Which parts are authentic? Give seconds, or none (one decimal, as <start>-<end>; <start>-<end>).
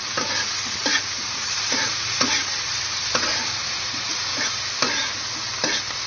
0.0-1.3; 4.3-6.1